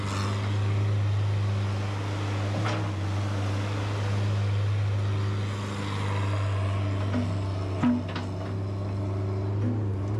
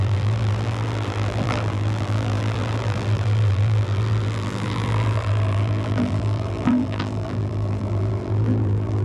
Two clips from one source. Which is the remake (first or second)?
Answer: second